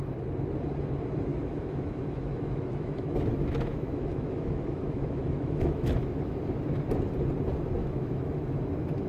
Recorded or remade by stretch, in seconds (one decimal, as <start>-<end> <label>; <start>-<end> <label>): 0.0-1.3 recorded; 1.3-6.4 remade; 6.4-7.8 recorded; 7.8-8.6 remade; 8.6-9.1 recorded